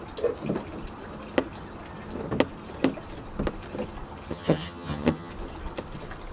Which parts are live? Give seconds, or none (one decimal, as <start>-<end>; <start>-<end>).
0.0-4.3; 5.3-6.3